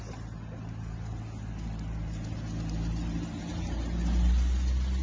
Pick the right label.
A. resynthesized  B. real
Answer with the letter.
B